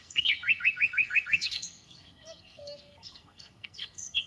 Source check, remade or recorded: remade